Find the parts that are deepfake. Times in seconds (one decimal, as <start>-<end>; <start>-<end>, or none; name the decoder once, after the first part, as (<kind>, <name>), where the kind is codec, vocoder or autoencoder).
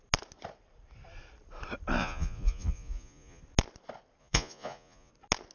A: 2.0-3.4 (vocoder, Vocos); 4.2-5.1